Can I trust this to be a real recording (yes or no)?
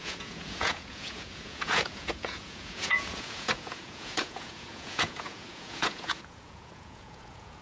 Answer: no